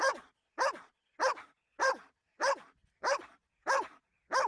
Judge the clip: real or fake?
real